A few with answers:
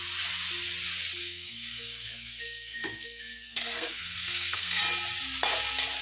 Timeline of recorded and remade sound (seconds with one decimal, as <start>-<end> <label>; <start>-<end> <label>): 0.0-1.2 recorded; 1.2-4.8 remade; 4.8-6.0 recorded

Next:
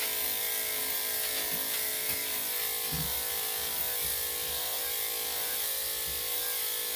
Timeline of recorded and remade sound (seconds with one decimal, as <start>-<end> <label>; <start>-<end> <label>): 0.0-7.0 recorded

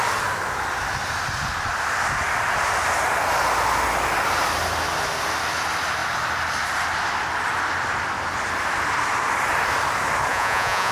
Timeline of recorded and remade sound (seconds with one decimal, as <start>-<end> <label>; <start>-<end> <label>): 0.0-10.3 recorded; 10.3-10.9 remade

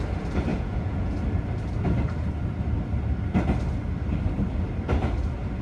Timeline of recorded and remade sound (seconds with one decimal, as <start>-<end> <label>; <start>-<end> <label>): 0.0-0.5 recorded; 0.5-1.1 remade; 1.1-5.6 recorded